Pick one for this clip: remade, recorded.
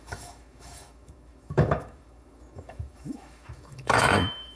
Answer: remade